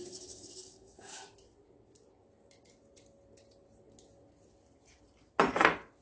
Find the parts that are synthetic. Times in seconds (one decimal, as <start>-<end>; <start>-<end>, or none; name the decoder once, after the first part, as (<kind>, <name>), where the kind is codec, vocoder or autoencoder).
0.0-1.3 (codec, DAC)

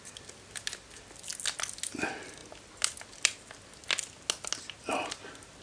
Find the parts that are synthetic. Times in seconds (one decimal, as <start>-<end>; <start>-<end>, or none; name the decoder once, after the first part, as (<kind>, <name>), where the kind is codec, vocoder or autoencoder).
none

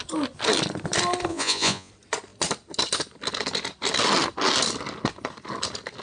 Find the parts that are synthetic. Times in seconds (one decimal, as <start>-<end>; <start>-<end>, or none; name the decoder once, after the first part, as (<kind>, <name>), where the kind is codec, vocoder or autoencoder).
1.3-1.9 (vocoder, Vocos)

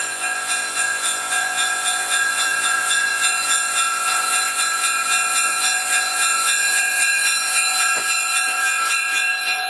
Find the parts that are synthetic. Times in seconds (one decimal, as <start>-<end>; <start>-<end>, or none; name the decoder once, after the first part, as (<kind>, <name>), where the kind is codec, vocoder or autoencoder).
0.0-9.7 (vocoder, Vocos)

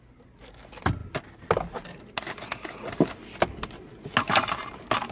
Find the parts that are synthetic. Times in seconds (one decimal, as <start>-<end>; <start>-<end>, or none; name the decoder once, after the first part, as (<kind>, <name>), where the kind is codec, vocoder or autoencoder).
none